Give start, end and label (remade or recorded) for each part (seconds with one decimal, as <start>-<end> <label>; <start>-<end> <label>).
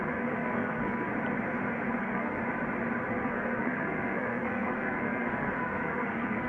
0.0-1.1 remade; 1.1-2.0 recorded; 2.0-2.4 remade; 2.4-3.1 recorded; 3.1-6.5 remade